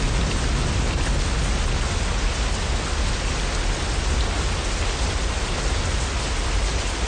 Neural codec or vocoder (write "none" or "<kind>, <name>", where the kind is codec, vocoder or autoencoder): none